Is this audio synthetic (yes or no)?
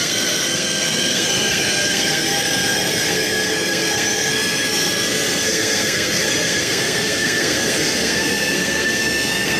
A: yes